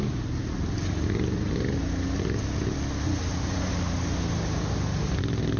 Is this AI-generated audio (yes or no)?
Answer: no